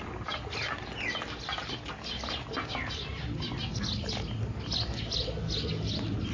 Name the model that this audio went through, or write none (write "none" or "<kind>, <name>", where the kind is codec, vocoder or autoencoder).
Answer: none